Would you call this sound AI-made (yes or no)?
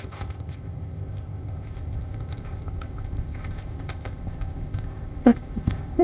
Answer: yes